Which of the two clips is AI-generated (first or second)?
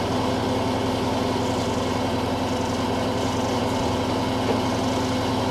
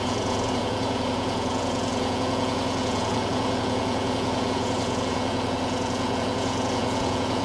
second